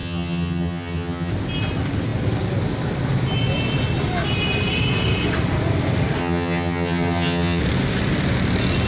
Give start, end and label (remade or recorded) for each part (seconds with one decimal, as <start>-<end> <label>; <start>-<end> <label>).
0.0-1.3 remade; 1.3-6.2 recorded; 6.2-7.6 remade; 7.6-8.9 recorded